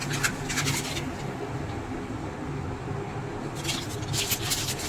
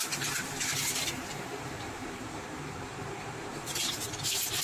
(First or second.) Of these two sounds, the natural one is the first